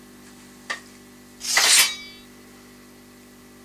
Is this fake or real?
real